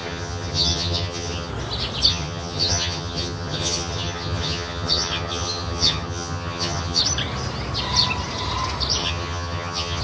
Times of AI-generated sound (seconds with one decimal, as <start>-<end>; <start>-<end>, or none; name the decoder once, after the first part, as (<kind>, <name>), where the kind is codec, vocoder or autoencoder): 0.0-1.5 (vocoder, HiFi-GAN); 2.1-7.0; 9.0-10.0